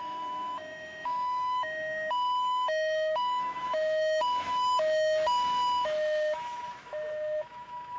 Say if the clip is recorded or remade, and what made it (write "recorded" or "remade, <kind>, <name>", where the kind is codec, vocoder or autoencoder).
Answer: remade, autoencoder, DAC-VAE